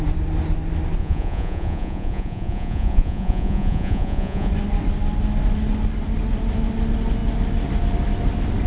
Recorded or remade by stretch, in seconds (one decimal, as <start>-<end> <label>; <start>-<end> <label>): 0.0-1.0 recorded; 1.0-4.5 remade; 4.5-8.7 recorded